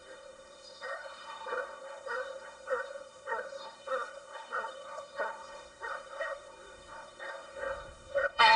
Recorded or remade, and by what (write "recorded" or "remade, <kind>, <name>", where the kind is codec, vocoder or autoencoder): remade, codec, SNAC